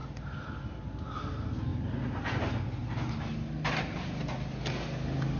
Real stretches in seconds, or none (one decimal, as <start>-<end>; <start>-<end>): 0.0-5.4